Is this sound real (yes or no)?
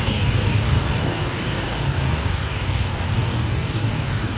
no